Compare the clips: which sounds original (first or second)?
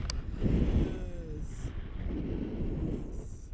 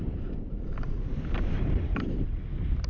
first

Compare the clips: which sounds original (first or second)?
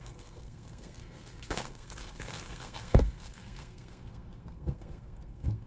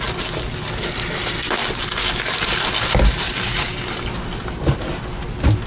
second